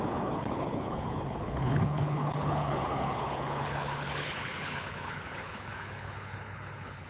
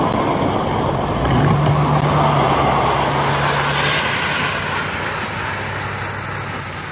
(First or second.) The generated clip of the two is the first